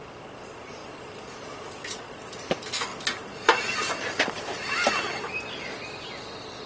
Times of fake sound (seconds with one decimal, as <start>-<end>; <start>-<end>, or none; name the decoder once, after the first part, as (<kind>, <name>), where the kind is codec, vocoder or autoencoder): 0.8-1.7 (vocoder, BigVGAN v2); 2.9-6.1